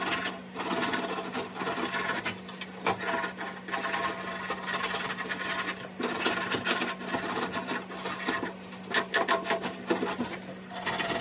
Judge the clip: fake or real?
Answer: real